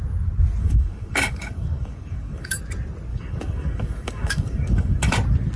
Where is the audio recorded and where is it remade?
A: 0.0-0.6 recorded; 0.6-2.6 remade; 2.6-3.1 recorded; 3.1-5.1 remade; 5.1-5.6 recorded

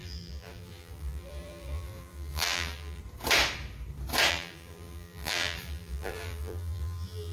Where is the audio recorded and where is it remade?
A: 0.0-3.0 remade; 3.0-4.3 recorded; 4.3-7.3 remade

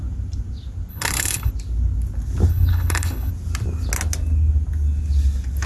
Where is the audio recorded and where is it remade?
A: 0.0-0.9 recorded; 0.9-1.5 remade; 1.5-2.5 recorded; 2.5-3.3 remade; 3.3-5.7 recorded

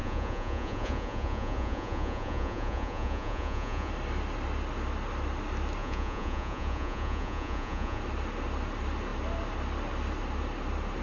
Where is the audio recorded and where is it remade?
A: 0.0-3.9 remade; 3.9-5.8 recorded; 5.8-8.0 remade; 8.0-11.0 recorded

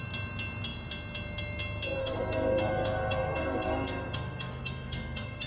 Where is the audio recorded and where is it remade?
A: 0.0-2.0 recorded; 2.0-5.5 remade

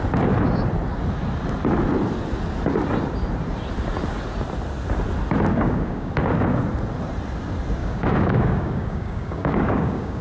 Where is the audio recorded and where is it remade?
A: 0.0-5.5 recorded; 5.5-6.1 remade; 6.1-7.8 recorded; 7.8-10.2 remade

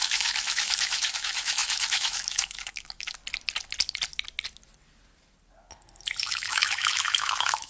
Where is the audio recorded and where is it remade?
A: 0.0-3.2 remade; 3.2-6.2 recorded; 6.2-7.7 remade